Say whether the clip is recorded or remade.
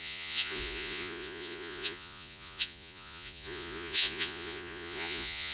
remade